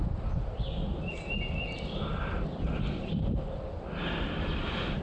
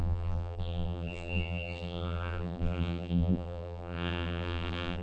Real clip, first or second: first